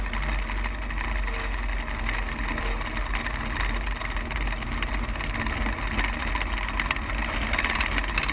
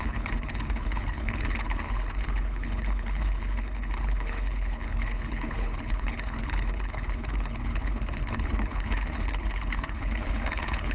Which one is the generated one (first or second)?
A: second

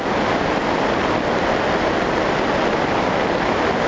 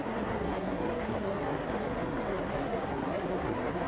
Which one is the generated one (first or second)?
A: second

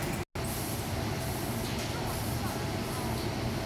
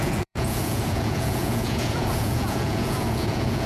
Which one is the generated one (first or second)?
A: second